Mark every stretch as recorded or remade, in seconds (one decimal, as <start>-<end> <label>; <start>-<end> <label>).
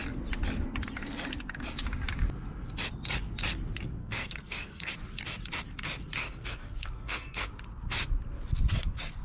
0.0-4.0 recorded; 4.0-4.9 remade; 4.9-6.2 recorded; 6.2-7.5 remade; 7.5-9.2 recorded